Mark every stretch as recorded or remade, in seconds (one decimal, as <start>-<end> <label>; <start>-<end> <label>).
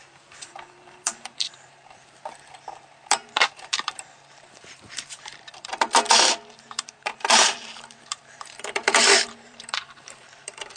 0.0-5.7 remade; 5.7-6.5 recorded; 6.5-10.8 remade